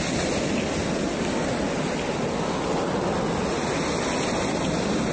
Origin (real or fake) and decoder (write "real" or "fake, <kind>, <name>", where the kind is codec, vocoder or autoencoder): real